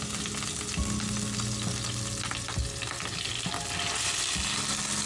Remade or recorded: recorded